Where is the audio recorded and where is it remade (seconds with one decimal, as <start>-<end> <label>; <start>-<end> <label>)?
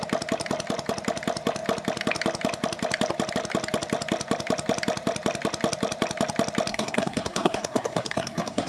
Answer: 0.0-6.7 recorded; 6.7-8.7 remade